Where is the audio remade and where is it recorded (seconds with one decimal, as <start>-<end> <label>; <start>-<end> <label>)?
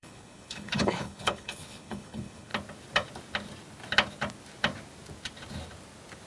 0.0-2.5 remade; 2.5-6.3 recorded